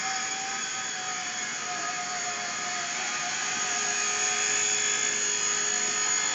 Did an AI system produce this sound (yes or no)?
no